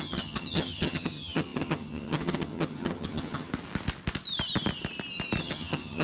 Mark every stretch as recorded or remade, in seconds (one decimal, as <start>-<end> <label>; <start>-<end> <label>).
0.0-3.5 remade; 3.5-5.4 recorded; 5.4-6.0 remade